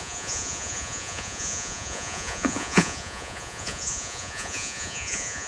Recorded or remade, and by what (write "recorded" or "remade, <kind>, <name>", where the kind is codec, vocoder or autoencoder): remade, vocoder, Vocos